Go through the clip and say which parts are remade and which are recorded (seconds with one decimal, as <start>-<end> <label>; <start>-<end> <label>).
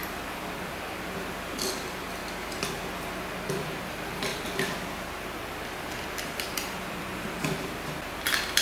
0.0-2.2 remade; 2.2-3.8 recorded; 3.8-8.6 remade